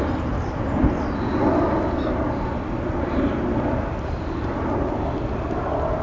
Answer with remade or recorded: recorded